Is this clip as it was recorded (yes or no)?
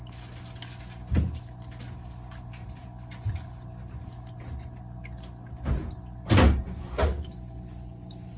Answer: yes